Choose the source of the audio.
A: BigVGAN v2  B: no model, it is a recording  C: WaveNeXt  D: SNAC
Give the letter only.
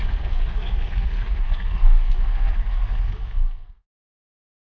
D